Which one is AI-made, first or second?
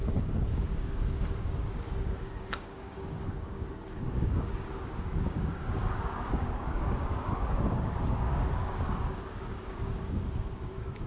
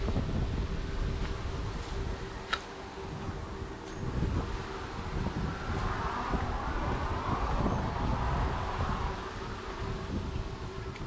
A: first